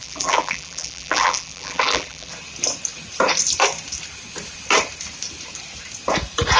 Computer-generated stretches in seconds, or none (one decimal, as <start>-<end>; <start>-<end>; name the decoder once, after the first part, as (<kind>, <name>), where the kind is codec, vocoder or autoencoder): 0.0-2.3 (vocoder, BigVGAN v2)